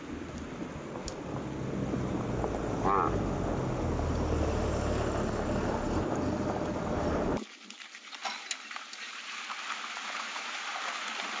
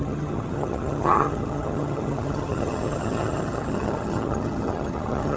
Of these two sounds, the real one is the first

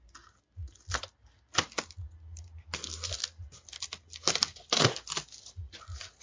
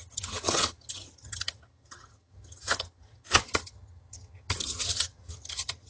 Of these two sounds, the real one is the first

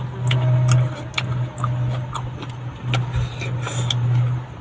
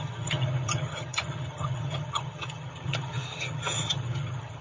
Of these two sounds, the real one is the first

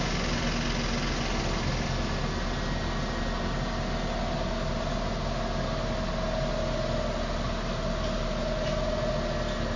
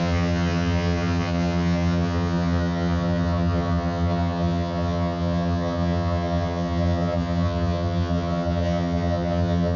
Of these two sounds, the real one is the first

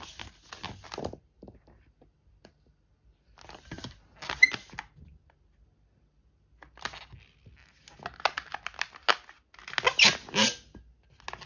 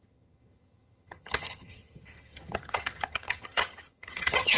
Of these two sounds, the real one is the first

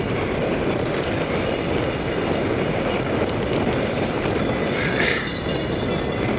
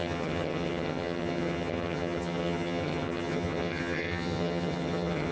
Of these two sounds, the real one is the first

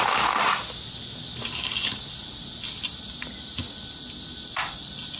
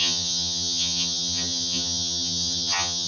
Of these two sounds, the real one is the first